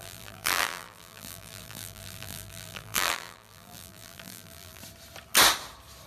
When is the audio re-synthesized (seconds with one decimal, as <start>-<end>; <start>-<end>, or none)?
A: 0.0-4.8